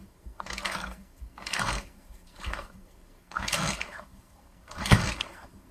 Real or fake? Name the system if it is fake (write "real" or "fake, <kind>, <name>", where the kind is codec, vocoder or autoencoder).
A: fake, codec, SNAC